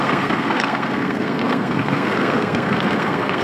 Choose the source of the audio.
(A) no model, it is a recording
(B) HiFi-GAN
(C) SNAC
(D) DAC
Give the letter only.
C